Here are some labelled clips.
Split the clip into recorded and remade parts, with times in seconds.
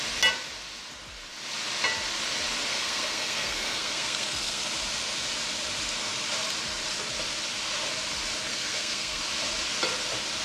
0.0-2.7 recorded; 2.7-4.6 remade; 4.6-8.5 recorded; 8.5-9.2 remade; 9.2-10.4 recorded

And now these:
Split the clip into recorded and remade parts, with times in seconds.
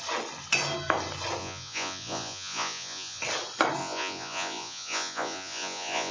0.0-1.4 recorded; 1.4-3.2 remade; 3.2-3.8 recorded; 3.8-6.1 remade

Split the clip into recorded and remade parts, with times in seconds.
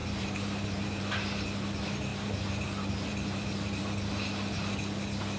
0.0-1.0 remade; 1.0-2.1 recorded; 2.1-3.8 remade; 3.8-5.4 recorded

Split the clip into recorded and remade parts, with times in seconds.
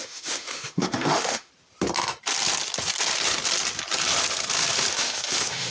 0.0-1.5 remade; 1.5-4.9 recorded; 4.9-5.7 remade